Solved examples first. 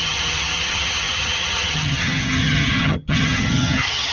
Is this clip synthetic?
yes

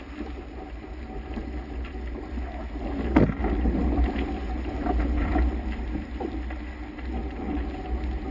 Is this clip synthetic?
no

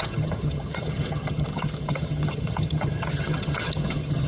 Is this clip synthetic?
yes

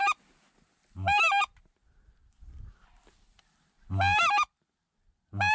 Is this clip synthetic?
no